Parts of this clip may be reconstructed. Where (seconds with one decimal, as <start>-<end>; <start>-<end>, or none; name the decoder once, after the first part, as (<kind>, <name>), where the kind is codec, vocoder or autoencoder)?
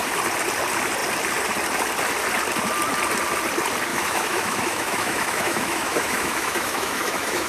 3.9-7.5 (autoencoder, DAC-VAE)